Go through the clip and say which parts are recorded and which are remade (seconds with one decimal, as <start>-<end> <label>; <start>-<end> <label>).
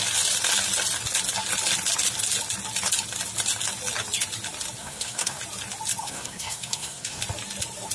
0.0-4.8 recorded; 4.8-5.4 remade; 5.4-6.0 recorded; 6.0-7.2 remade; 7.2-7.9 recorded